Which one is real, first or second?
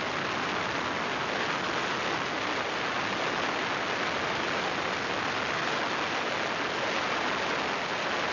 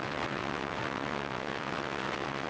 first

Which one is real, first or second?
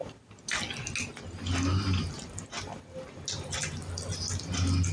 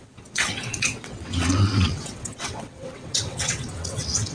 first